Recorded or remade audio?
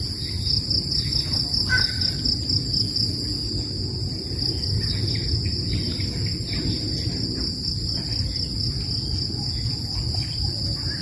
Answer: recorded